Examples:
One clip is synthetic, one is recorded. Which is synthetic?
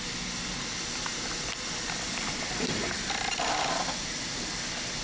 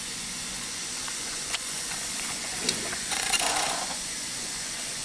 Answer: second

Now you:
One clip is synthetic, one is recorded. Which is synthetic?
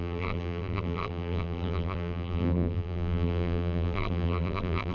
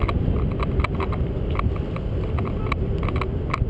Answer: first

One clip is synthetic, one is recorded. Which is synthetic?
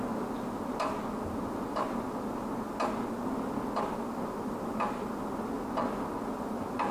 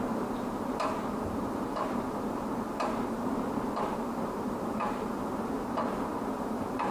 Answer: second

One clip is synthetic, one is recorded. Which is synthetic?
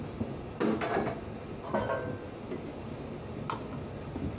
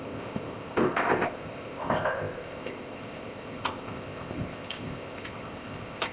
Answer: second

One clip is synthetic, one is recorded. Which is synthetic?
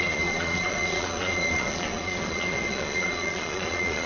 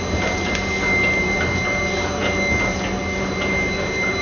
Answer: first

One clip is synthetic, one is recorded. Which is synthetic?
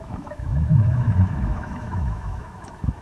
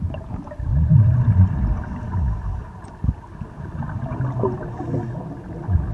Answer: first